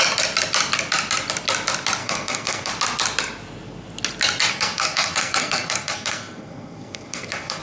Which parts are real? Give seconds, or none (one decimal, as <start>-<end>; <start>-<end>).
0.0-2.0; 2.7-4.5